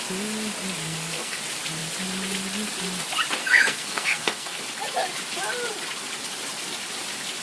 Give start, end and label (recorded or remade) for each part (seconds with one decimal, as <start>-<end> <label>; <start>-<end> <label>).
0.0-0.8 recorded; 0.8-1.4 remade; 1.4-3.4 recorded; 3.4-4.6 remade; 4.6-7.4 recorded